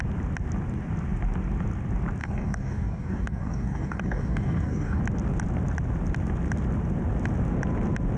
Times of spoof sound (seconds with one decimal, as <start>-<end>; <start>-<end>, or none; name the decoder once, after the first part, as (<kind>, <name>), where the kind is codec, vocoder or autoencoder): 2.2-5.0 (codec, DAC)